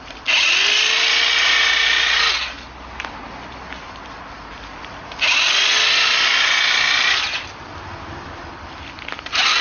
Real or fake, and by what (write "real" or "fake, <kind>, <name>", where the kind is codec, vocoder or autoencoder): real